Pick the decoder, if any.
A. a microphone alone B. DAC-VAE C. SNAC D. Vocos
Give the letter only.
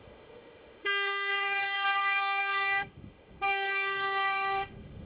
B